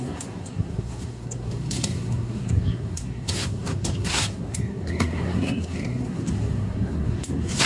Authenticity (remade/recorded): remade